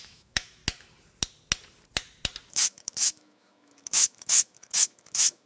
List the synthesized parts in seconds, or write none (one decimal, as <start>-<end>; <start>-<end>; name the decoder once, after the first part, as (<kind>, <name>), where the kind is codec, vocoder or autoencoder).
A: 0.0-0.6 (autoencoder, DAC-VAE); 2.5-5.5